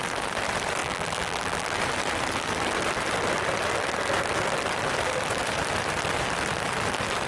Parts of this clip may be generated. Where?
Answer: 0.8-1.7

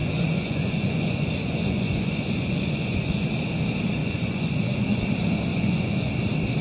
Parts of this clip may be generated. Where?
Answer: 0.0-3.3; 4.0-5.0; 5.5-6.1

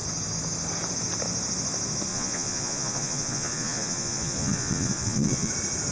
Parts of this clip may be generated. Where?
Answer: 2.1-5.5

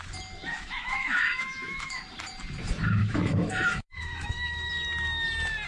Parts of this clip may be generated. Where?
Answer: 0.4-2.0; 3.0-4.7

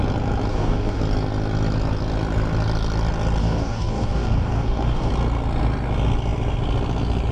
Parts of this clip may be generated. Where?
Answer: 0.5-1.0; 3.4-5.1

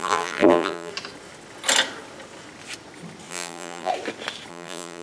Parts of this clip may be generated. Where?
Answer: 0.0-0.9; 3.3-3.9; 4.5-5.0